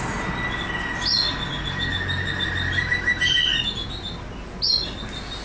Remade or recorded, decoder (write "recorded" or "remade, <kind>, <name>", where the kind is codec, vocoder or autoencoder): recorded